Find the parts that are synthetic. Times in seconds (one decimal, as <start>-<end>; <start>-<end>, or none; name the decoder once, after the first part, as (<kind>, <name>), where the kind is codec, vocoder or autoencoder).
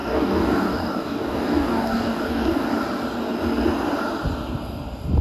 0.0-2.6 (codec, DAC)